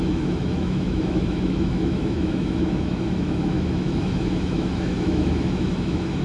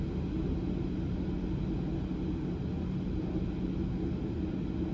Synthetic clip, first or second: first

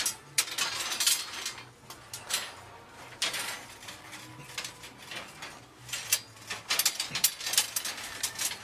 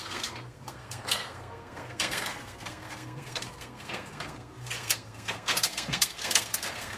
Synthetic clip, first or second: second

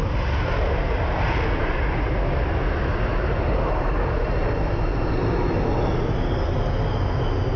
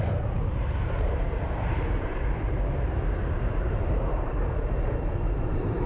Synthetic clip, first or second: second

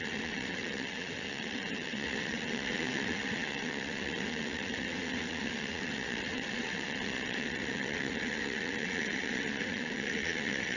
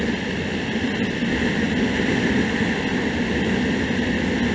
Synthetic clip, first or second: first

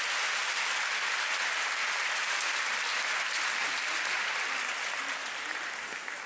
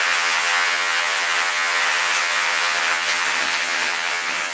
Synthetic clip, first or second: second